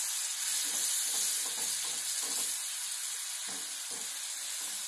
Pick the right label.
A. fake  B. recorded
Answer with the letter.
B